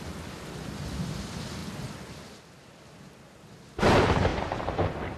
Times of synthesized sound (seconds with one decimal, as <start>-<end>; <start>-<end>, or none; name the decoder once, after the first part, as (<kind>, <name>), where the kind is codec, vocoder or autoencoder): none

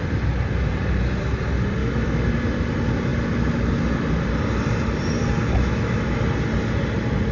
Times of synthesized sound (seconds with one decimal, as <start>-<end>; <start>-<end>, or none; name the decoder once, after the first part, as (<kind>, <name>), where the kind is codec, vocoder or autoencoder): 1.8-2.3 (autoencoder, DAC-VAE); 5.5-6.2

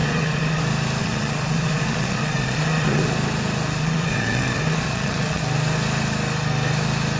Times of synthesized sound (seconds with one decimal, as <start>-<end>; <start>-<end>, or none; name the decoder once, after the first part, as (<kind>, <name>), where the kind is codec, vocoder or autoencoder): 0.0-0.6 (vocoder, Vocos); 1.0-3.0; 3.8-5.4

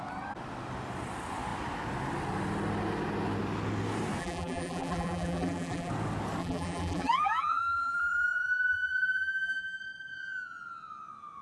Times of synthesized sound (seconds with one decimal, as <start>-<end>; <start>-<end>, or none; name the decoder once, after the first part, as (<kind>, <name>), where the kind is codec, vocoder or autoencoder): 4.2-5.9 (vocoder, BigVGAN v2); 6.4-9.8

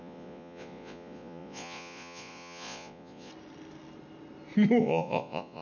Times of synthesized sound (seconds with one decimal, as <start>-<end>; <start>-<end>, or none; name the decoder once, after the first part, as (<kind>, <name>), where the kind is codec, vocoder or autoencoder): 0.0-3.3 (vocoder, Vocos); 4.8-5.6

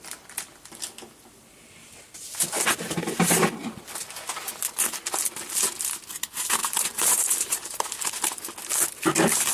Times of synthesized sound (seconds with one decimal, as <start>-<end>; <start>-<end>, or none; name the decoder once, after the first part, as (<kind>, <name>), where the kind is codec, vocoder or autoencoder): 6.6-7.8 (vocoder, BigVGAN v2)